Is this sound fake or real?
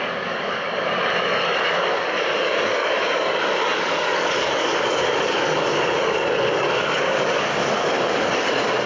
fake